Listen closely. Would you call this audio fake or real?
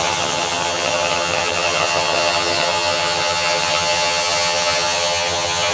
fake